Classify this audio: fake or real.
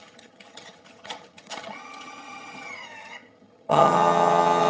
fake